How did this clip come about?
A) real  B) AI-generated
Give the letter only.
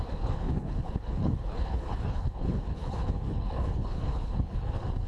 B